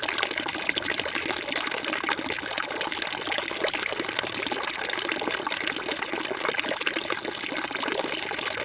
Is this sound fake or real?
real